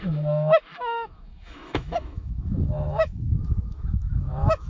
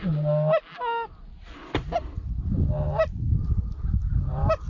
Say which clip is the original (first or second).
second